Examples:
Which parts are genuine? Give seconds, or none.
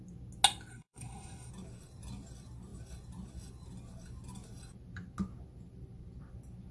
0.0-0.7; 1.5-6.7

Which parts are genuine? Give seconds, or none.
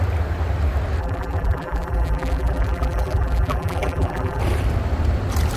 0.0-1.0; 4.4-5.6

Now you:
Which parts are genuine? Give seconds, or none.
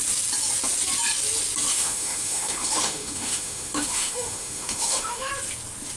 0.0-1.7; 5.3-6.0